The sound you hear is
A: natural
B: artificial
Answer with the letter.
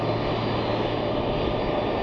A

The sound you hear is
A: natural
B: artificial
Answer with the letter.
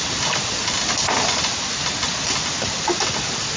A